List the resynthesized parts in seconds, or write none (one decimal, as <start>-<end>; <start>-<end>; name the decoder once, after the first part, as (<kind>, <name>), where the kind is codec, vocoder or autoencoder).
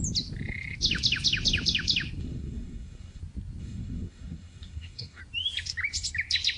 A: 2.2-3.2 (codec, SNAC); 3.6-5.2